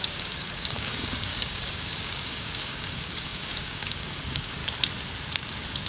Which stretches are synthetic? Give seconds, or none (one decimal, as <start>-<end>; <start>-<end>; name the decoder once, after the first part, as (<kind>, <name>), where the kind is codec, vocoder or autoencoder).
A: 0.0-4.6 (codec, DAC)